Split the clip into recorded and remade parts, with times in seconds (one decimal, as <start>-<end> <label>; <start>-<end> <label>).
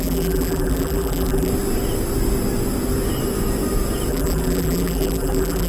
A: 0.0-1.5 remade; 1.5-4.1 recorded; 4.1-5.7 remade